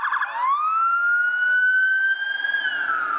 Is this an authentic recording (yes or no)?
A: yes